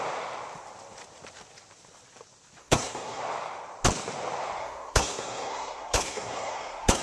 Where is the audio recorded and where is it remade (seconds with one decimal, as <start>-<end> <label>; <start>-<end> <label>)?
0.0-2.6 recorded; 2.6-3.2 remade; 3.2-4.6 recorded; 4.6-7.0 remade